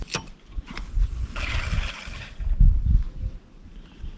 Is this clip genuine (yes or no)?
yes